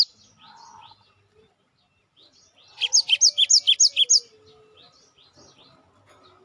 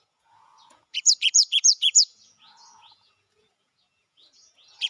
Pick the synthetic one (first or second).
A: second